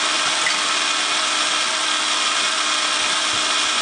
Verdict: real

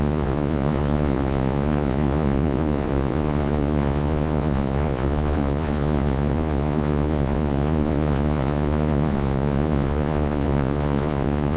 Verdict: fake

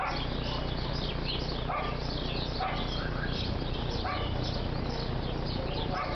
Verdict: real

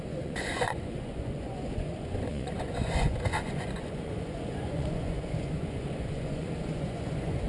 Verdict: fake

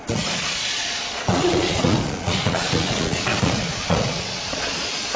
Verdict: fake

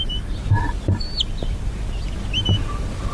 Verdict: real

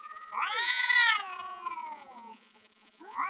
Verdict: fake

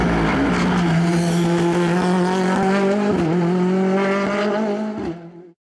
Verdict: real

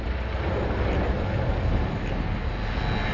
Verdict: real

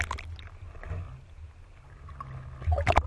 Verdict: real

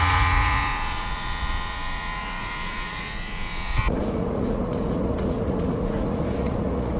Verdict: fake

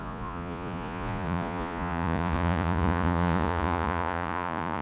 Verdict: fake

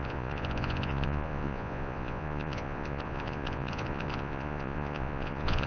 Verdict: fake